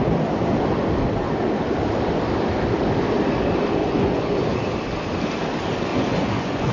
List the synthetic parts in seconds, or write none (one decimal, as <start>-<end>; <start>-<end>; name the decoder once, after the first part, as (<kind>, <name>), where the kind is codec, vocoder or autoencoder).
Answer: 3.8-4.5 (vocoder, Vocos); 5.9-6.7